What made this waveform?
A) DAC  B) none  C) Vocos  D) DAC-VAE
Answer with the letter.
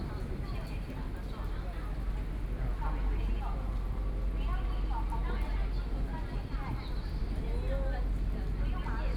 B